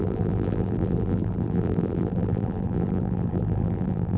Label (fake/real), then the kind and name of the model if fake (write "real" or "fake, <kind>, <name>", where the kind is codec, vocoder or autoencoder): fake, vocoder, BigVGAN v2